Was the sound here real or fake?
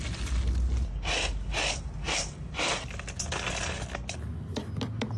real